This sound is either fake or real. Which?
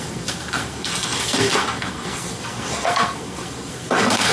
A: fake